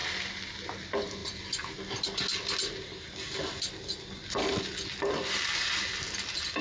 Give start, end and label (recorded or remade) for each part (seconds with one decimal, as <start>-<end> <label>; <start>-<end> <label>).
0.0-0.5 remade; 0.5-6.6 recorded